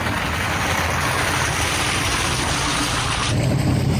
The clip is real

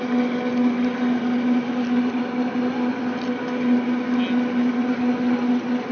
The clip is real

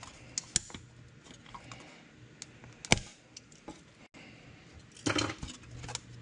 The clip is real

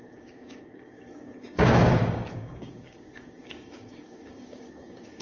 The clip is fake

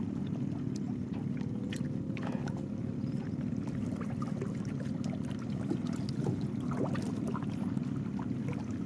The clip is real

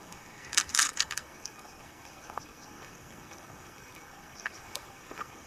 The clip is fake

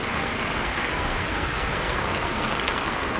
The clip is fake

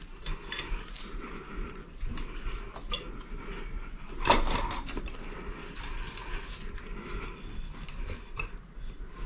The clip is real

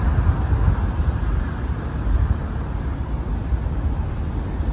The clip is real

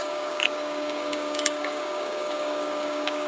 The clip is fake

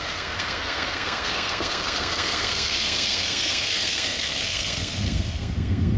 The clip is fake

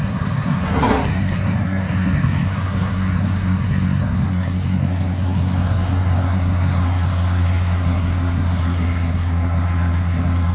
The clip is fake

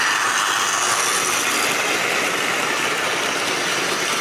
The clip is real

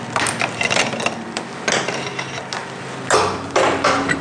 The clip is real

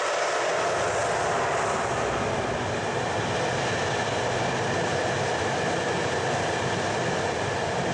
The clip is real